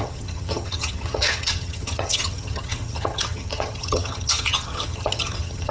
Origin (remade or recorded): remade